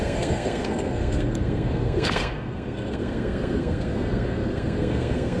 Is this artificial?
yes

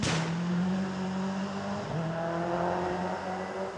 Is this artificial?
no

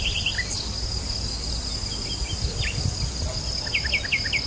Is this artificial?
no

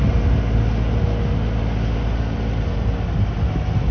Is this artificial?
no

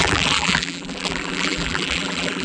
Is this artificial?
yes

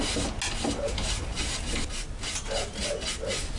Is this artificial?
no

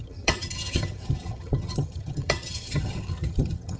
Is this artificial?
yes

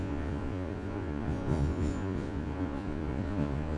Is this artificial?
yes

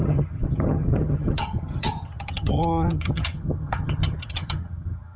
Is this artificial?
yes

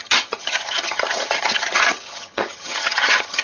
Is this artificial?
yes